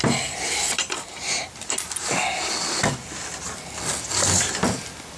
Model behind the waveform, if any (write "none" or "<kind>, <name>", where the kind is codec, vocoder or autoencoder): none